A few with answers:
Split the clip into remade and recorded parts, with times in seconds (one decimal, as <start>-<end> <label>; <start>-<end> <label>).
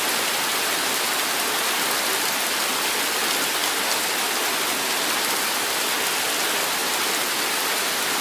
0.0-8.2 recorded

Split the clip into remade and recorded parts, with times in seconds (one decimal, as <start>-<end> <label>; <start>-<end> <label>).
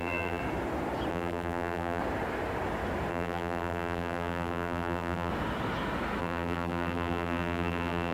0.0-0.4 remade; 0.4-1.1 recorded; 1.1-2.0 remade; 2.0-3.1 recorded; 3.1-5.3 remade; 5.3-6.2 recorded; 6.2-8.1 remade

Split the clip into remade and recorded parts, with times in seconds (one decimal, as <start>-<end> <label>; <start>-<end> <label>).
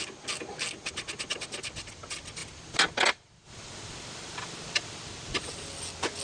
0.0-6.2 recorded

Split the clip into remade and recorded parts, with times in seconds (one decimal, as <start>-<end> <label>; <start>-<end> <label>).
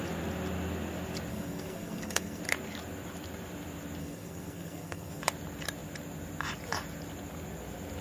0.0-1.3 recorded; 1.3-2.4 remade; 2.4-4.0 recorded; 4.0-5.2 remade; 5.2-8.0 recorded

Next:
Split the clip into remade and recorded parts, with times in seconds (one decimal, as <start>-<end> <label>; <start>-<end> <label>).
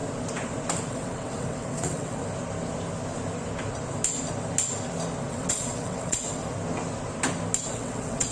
0.0-0.9 recorded; 0.9-2.2 remade; 2.2-5.3 recorded; 5.3-6.4 remade; 6.4-7.7 recorded; 7.7-8.3 remade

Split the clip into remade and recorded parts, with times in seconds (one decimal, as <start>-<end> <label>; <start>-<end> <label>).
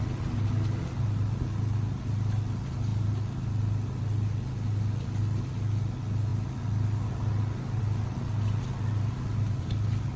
0.0-10.2 recorded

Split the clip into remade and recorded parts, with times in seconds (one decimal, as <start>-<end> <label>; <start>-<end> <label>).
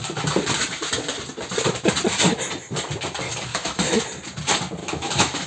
0.0-3.5 recorded; 3.5-4.0 remade; 4.0-4.8 recorded; 4.8-5.5 remade